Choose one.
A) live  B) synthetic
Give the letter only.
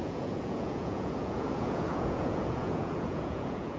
B